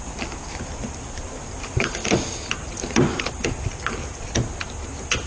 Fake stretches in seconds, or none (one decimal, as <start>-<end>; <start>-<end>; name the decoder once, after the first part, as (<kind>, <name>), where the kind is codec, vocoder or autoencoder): none